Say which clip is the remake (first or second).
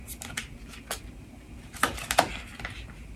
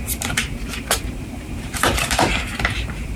second